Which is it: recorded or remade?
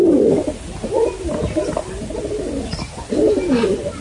recorded